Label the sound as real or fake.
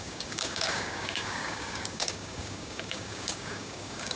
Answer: fake